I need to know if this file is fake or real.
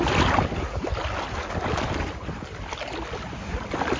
real